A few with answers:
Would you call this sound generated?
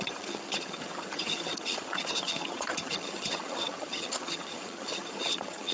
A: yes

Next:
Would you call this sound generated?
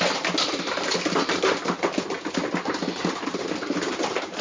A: no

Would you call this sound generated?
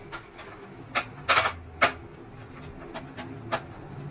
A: no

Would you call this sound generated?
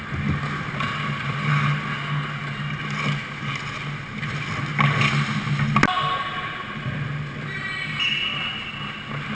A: no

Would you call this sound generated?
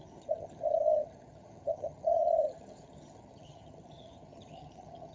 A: yes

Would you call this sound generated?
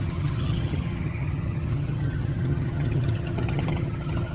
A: yes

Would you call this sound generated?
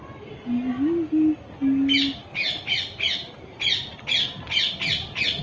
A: no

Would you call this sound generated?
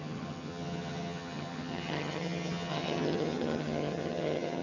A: yes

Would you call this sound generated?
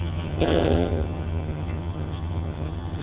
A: yes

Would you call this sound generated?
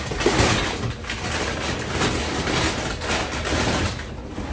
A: no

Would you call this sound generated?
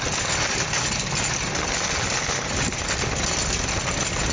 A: no